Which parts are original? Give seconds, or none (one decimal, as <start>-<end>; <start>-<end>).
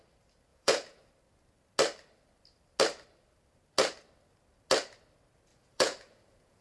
0.0-0.5; 1.1-5.5